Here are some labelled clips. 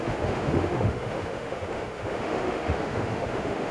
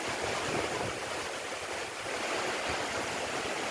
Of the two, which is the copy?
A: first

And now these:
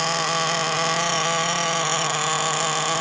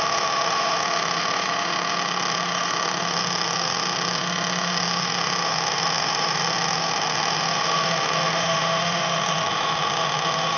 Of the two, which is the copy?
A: second